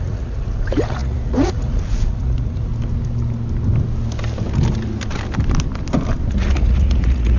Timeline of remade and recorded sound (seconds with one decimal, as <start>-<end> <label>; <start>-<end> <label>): 0.0-2.7 remade; 2.7-6.3 recorded; 6.3-7.4 remade